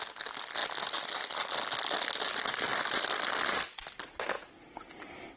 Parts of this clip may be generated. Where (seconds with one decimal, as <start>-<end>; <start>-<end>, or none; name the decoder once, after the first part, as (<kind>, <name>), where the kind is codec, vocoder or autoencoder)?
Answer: none